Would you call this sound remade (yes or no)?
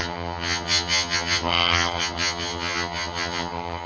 yes